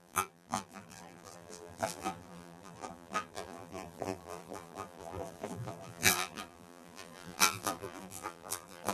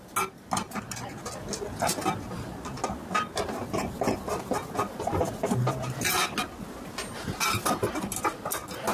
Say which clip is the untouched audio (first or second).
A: second